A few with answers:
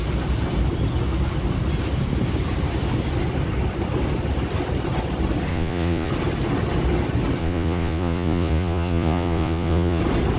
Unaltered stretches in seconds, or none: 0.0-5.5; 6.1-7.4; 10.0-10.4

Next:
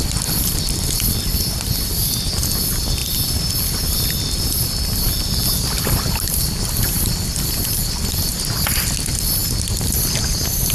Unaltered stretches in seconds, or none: 0.0-3.0; 6.6-10.7

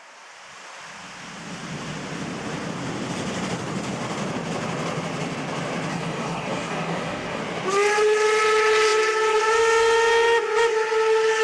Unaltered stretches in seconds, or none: 0.0-5.9; 7.4-11.4

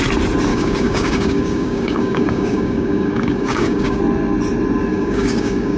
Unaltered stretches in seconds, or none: 0.0-0.5; 4.0-4.9